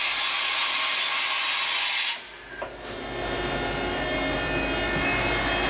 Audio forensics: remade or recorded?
recorded